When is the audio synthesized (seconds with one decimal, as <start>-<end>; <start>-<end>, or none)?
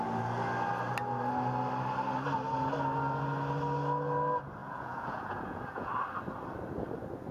4.6-5.9